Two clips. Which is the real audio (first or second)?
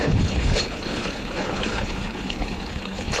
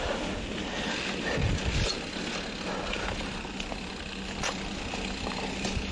second